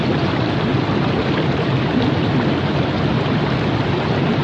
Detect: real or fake real